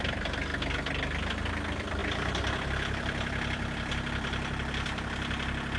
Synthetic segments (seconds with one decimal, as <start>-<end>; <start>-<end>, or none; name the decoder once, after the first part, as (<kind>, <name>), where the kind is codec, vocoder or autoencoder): 0.0-0.5 (vocoder, BigVGAN v2); 1.5-5.8